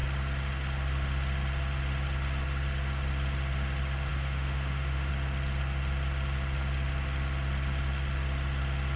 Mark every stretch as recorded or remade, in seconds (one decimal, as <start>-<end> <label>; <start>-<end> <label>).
0.0-4.1 recorded; 4.1-5.1 remade; 5.1-9.0 recorded